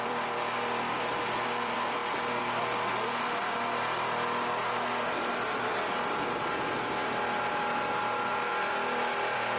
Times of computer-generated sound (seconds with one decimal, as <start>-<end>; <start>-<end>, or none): 0.0-2.0; 5.6-7.0; 8.5-9.6